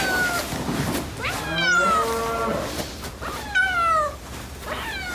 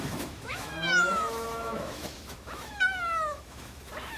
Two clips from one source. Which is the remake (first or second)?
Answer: second